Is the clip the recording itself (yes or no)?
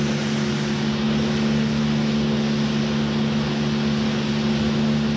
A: yes